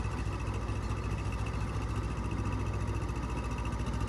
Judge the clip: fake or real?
real